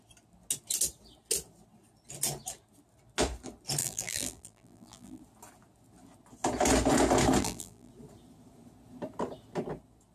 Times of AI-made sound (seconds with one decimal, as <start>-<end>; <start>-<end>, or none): 3.8-5.2; 7.4-7.9